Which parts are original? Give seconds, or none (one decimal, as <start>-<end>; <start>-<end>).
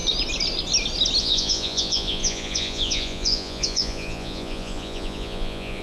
0.0-1.2